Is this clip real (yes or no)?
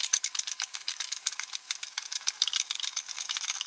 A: no